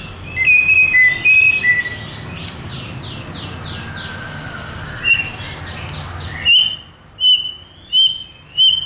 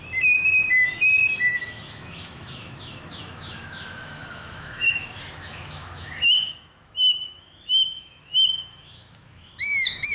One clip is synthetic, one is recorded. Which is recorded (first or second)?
first